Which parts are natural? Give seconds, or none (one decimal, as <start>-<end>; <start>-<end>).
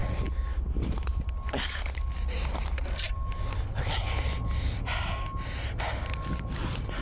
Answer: 0.0-7.0